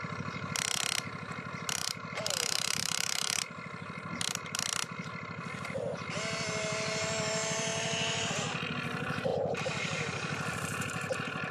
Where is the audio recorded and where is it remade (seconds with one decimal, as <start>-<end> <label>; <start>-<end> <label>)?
0.0-1.8 recorded; 1.8-3.4 remade; 3.4-9.3 recorded; 9.3-11.5 remade